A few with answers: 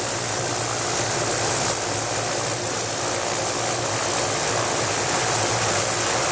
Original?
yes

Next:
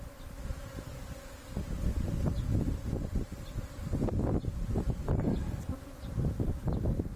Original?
yes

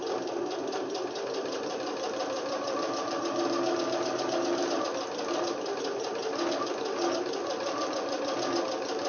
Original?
yes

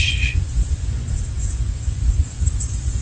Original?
no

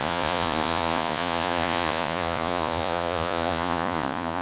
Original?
no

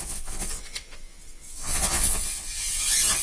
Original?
no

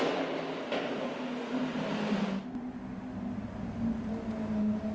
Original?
yes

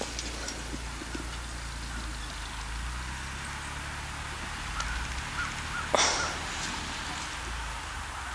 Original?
yes